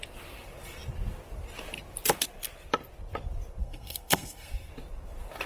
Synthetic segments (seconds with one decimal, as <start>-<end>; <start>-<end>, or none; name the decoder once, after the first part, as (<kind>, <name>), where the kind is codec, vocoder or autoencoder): 3.6-4.7 (codec, SNAC)